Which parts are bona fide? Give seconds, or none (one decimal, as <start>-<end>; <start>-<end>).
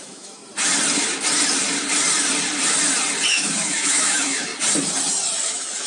0.4-3.3; 4.5-5.5